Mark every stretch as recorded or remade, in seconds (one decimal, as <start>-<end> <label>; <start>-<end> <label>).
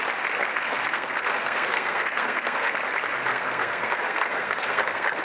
0.0-0.4 recorded; 0.4-2.7 remade; 2.7-3.3 recorded; 3.3-5.2 remade